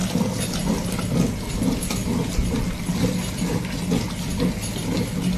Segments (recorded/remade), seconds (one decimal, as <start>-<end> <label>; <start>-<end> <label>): 0.0-2.0 recorded; 2.0-2.6 remade; 2.6-5.4 recorded